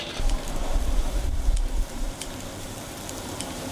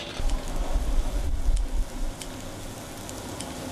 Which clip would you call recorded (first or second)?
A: second